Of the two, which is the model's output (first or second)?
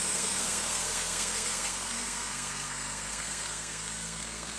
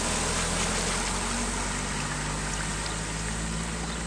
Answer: first